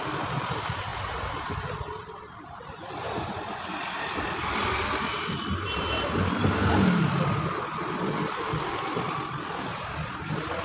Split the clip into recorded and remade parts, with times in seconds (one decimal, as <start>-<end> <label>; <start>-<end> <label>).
0.0-0.9 remade; 0.9-1.5 recorded; 1.5-4.6 remade; 4.6-9.3 recorded; 9.3-10.6 remade